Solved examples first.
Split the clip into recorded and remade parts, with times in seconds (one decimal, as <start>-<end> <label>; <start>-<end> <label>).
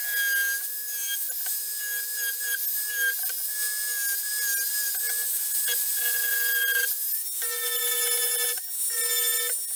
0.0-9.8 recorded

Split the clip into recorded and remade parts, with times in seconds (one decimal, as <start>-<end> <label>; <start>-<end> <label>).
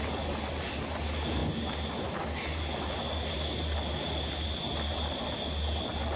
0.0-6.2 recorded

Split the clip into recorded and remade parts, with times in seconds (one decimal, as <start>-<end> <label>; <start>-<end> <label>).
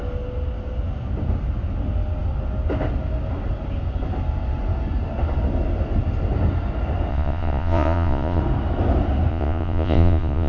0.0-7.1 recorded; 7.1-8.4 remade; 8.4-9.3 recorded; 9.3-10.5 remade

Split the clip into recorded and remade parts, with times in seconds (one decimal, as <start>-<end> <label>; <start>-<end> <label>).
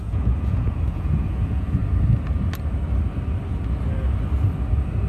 0.0-1.8 remade; 1.8-5.1 recorded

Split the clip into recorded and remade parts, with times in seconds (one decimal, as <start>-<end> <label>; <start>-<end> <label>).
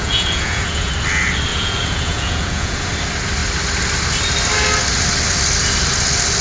0.0-0.9 remade; 0.9-1.5 recorded; 1.5-2.9 remade; 2.9-6.4 recorded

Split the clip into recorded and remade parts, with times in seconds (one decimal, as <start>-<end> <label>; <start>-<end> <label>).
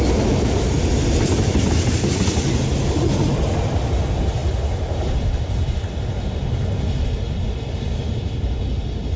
0.0-9.2 recorded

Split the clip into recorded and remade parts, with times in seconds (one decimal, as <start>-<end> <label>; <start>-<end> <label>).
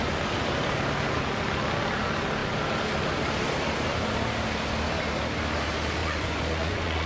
0.0-6.0 recorded; 6.0-7.1 remade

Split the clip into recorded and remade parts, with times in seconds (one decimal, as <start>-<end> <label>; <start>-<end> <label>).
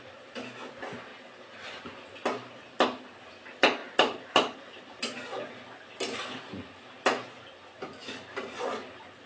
0.0-9.3 recorded